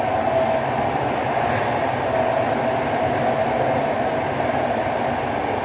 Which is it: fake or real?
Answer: real